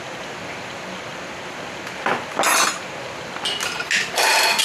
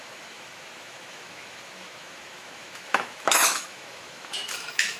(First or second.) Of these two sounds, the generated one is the second